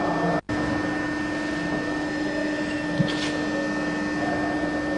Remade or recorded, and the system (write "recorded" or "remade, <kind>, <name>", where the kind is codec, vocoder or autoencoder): recorded